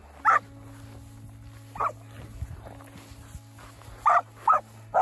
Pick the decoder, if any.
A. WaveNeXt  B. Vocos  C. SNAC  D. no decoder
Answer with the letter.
D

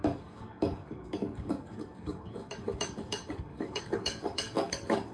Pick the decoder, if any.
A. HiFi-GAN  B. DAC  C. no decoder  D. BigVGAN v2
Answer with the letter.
B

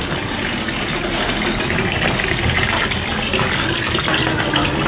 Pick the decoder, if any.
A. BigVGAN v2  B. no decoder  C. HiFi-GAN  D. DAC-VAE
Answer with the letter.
B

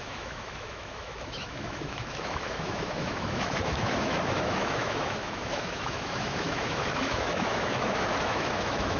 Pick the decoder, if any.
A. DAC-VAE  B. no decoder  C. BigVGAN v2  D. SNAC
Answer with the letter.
A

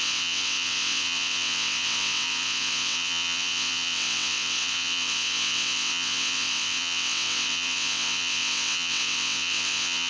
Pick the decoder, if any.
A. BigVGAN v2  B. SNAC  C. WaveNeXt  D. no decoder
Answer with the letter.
C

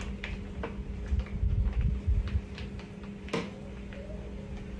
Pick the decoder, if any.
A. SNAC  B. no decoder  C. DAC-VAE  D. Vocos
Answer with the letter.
B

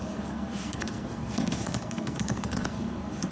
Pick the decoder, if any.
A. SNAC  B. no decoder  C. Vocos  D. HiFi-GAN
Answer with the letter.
A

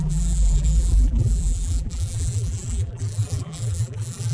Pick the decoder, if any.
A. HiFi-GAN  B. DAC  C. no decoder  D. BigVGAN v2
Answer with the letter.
D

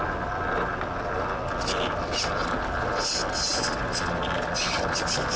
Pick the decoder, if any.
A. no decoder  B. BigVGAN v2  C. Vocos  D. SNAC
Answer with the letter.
A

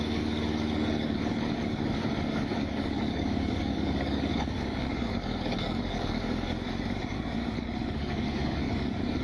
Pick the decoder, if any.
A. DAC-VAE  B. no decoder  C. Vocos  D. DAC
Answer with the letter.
D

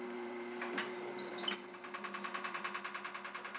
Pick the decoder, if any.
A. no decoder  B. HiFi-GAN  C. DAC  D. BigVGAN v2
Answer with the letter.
D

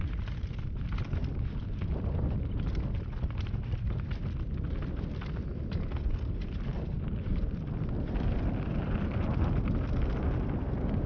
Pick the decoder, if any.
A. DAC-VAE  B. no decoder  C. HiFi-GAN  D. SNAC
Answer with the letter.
B